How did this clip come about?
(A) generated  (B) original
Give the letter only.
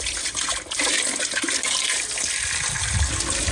B